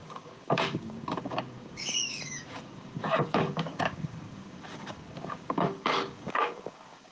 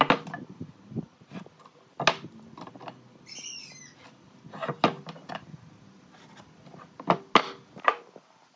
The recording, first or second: second